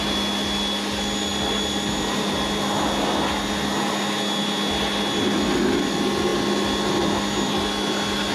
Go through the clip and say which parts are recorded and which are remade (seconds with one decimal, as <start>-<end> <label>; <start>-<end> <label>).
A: 0.0-8.3 recorded